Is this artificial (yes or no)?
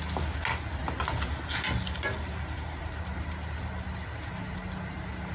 no